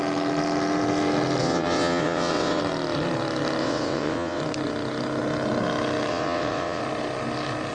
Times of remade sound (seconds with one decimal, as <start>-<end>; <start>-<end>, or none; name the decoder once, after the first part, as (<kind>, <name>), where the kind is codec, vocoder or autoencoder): 1.4-2.6 (vocoder, WaveNeXt); 3.6-4.4; 6.1-6.8